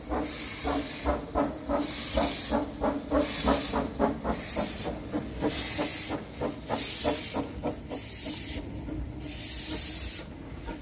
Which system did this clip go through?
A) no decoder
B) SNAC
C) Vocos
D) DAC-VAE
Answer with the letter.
A